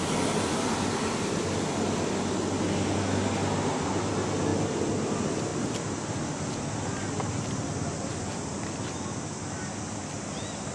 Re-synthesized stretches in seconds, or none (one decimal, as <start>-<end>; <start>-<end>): 4.5-5.1; 5.5-6.5